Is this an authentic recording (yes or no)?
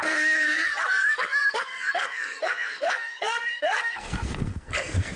no